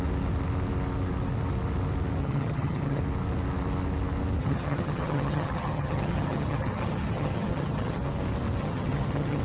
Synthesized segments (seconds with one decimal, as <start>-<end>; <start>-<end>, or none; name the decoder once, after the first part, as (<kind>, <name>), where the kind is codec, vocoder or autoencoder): 2.2-3.0 (vocoder, HiFi-GAN); 4.4-8.0; 8.6-9.4